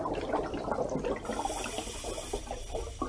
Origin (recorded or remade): recorded